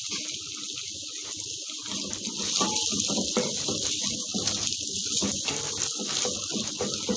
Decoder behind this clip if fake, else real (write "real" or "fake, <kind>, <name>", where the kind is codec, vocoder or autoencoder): real